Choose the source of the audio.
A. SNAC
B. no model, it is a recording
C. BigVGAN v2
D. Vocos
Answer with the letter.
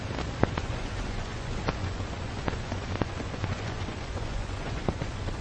D